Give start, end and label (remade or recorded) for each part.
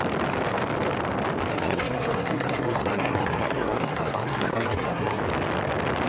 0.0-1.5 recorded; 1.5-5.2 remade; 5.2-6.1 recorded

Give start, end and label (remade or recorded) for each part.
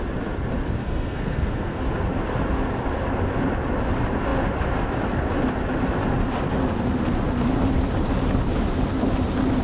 0.0-0.8 recorded; 0.8-1.8 remade; 1.8-9.6 recorded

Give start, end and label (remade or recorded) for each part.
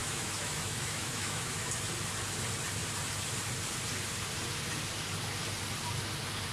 0.0-1.7 remade; 1.7-6.5 recorded